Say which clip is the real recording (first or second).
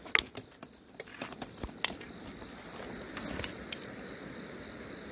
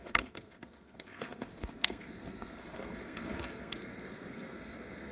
first